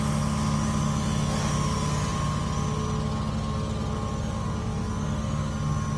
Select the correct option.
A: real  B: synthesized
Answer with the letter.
A